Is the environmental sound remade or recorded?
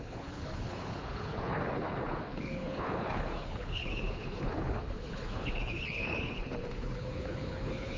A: remade